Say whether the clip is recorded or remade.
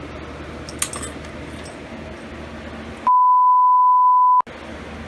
recorded